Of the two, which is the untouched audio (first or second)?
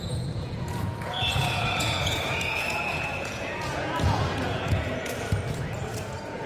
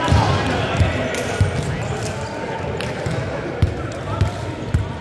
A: second